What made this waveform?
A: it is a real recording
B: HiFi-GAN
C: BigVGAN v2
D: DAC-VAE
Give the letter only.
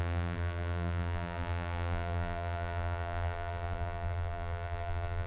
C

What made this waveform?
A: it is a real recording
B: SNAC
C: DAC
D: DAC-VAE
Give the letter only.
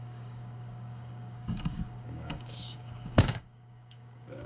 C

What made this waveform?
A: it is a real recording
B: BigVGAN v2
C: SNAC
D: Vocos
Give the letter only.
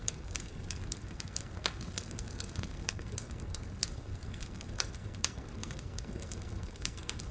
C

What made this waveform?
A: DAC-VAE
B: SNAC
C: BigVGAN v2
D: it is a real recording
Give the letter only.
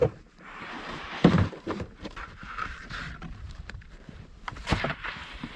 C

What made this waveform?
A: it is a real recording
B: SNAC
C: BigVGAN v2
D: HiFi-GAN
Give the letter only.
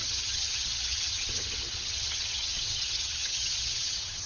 D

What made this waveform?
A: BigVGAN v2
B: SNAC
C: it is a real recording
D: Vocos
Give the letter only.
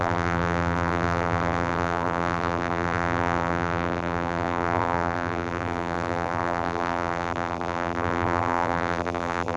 A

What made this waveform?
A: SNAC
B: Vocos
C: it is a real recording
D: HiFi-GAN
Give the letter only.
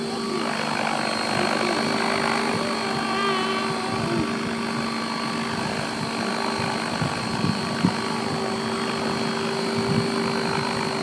C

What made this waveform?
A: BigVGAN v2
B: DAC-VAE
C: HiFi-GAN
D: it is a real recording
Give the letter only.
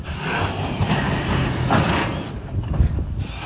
A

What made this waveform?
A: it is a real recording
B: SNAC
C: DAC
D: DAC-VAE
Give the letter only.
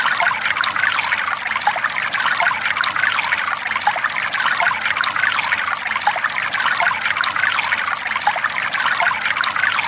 A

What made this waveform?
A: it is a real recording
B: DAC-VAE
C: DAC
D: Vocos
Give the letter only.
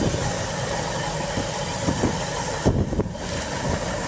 A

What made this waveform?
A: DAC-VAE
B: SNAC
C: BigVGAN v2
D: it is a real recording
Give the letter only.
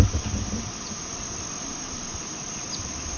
D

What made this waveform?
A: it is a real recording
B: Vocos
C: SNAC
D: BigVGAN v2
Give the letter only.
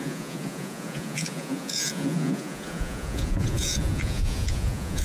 B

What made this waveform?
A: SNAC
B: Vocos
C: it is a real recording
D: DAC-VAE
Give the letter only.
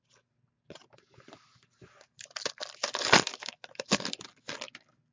C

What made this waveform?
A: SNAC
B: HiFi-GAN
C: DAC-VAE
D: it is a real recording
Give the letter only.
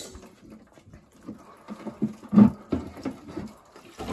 D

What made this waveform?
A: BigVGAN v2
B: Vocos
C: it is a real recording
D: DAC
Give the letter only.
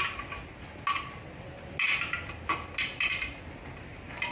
C